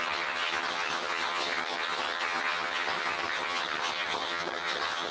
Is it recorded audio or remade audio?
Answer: remade